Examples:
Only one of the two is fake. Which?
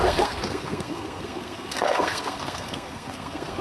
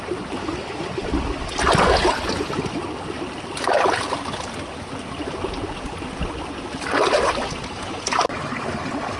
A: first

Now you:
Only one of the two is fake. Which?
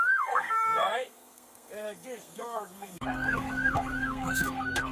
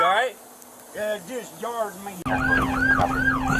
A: first